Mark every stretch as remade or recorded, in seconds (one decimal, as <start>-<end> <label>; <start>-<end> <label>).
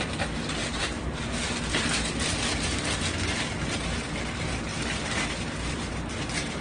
0.0-0.6 recorded; 0.6-1.2 remade; 1.2-4.7 recorded; 4.7-6.6 remade